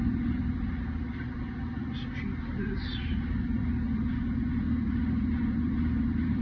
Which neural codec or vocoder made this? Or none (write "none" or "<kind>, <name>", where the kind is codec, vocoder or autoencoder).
vocoder, BigVGAN v2